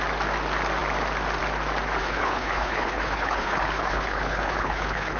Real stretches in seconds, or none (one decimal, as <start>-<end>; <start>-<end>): 0.0-2.0